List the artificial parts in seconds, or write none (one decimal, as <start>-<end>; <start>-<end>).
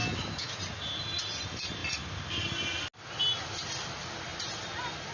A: 0.0-0.6